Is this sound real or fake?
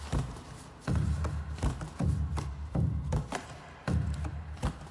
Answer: fake